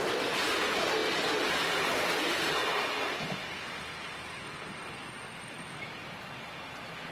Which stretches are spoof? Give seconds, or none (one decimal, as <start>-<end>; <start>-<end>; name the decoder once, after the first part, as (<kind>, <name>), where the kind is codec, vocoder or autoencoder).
none